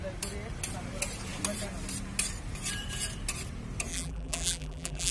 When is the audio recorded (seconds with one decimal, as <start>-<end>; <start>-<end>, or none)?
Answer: 0.0-3.9

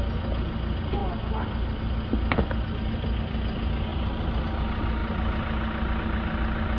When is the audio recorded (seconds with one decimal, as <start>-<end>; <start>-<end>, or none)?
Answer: 0.0-3.9; 4.4-6.8

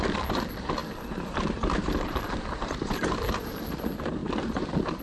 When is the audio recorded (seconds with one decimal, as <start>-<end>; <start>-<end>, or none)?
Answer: none

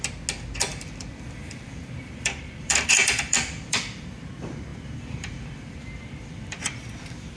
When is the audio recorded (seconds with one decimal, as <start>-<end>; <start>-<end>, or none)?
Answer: 0.0-0.7; 4.3-4.7

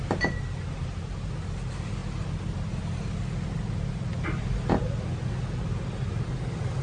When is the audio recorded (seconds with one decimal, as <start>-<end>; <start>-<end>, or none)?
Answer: 0.0-6.8

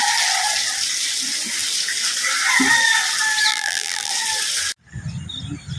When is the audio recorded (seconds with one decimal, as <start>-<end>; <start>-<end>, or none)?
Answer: 0.0-3.5; 4.1-5.8